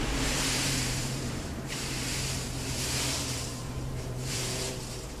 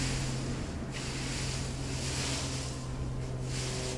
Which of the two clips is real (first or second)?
second